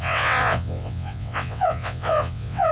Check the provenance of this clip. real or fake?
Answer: fake